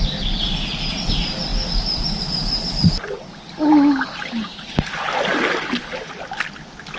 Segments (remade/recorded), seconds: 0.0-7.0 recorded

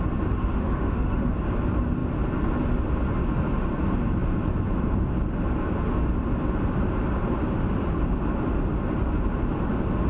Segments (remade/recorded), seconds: 0.0-0.4 recorded; 0.4-1.3 remade; 1.3-10.1 recorded